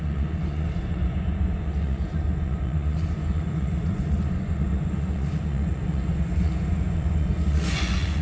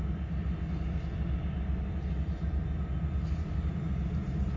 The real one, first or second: second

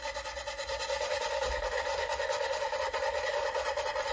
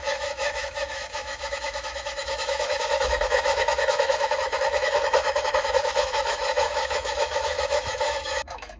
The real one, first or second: first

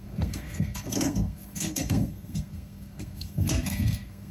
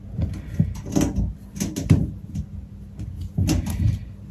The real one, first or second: second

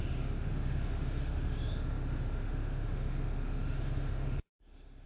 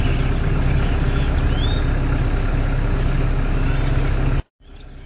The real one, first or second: second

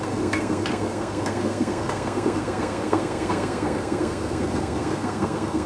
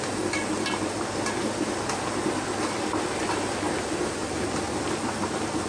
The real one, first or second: second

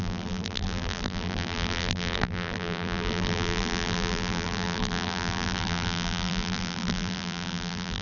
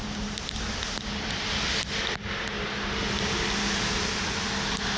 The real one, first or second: second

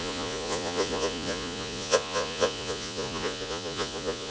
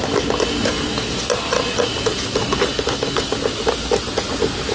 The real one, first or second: second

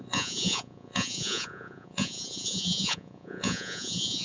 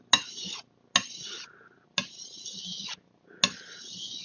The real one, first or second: second